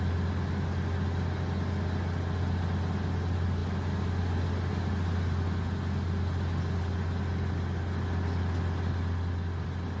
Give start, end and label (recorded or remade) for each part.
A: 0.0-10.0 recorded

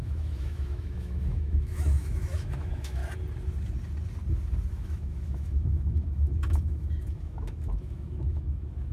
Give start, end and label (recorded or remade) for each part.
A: 0.0-3.0 remade; 3.0-4.7 recorded; 4.7-8.9 remade

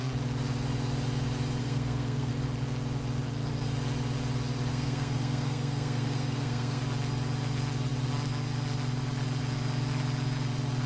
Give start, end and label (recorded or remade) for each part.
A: 0.0-1.6 recorded; 1.6-2.3 remade; 2.3-4.7 recorded; 4.7-6.8 remade; 6.8-10.9 recorded

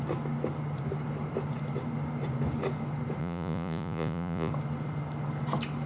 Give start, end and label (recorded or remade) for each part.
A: 0.0-3.2 recorded; 3.2-4.5 remade; 4.5-5.9 recorded

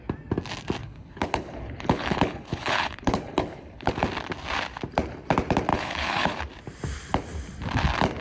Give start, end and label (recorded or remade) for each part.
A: 0.0-0.8 recorded; 0.8-3.9 remade; 3.9-5.7 recorded; 5.7-6.4 remade; 6.4-8.2 recorded

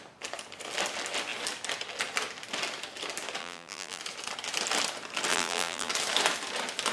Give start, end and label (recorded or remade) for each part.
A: 0.0-3.4 recorded; 3.4-4.0 remade; 4.0-5.3 recorded; 5.3-5.9 remade; 5.9-6.9 recorded